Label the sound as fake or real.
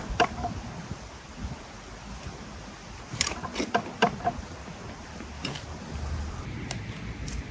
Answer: real